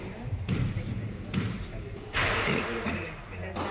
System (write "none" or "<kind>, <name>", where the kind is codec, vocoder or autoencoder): none